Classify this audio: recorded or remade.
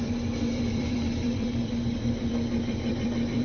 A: remade